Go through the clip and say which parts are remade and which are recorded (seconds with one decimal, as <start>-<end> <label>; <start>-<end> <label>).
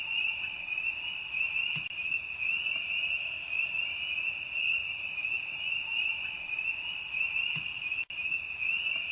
0.0-9.1 recorded